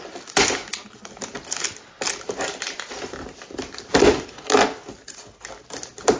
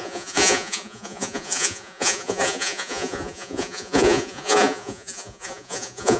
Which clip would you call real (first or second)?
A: first